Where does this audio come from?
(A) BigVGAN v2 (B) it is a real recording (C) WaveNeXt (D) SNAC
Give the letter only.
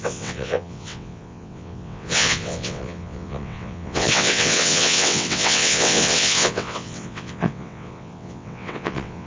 C